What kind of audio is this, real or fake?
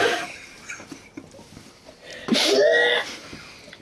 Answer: real